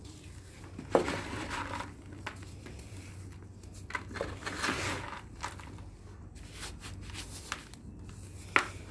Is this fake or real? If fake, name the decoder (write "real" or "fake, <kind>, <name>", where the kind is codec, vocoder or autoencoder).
real